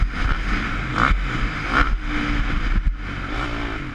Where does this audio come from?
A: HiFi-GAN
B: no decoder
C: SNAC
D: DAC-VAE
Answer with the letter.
B